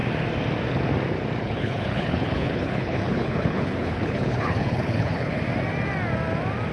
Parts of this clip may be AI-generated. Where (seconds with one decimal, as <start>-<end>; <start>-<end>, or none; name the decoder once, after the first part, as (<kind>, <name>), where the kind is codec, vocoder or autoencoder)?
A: 1.4-5.4 (codec, HILCodec)

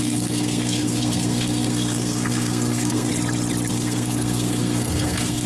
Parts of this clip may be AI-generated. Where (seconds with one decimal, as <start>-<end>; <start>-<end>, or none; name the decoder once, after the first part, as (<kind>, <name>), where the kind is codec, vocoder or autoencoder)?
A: 0.0-3.1 (codec, SNAC); 3.7-5.5

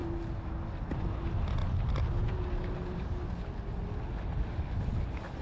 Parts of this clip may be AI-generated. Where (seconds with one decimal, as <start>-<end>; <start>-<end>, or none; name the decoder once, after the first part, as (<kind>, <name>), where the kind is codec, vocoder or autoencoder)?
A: none

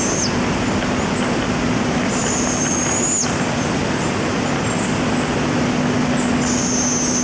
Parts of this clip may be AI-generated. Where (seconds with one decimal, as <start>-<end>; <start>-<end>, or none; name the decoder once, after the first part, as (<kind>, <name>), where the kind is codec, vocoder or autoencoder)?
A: none

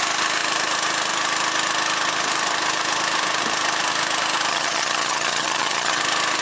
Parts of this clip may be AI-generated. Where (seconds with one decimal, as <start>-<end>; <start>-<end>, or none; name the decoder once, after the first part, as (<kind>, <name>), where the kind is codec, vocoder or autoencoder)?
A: 4.5-6.0 (vocoder, HiFi-GAN)

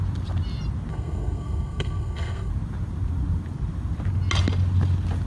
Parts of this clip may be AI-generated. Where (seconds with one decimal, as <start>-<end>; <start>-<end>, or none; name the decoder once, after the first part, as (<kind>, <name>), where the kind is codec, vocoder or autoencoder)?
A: 0.9-2.5 (codec, SNAC)

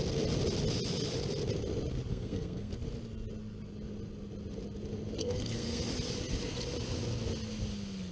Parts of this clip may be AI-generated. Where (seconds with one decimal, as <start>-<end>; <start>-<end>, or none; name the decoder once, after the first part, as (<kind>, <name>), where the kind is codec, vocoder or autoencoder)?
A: 2.1-2.7 (codec, SNAC); 5.2-5.8